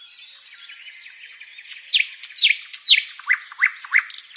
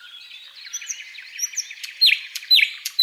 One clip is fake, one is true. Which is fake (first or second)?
second